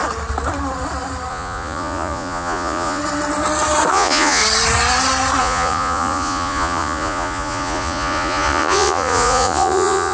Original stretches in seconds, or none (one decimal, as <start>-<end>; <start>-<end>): 0.0-1.3; 3.0-3.9; 4.4-5.4